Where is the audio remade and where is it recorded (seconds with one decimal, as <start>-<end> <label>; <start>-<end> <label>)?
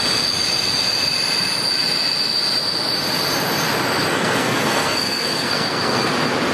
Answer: 0.0-4.1 recorded; 4.1-6.1 remade; 6.1-6.5 recorded